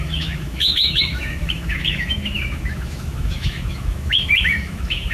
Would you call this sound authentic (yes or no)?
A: no